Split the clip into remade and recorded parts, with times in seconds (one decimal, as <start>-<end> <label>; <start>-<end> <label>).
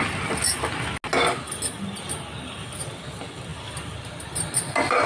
0.0-5.1 recorded